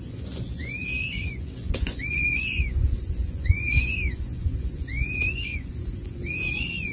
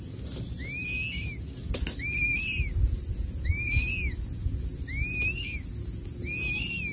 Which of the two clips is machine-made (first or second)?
first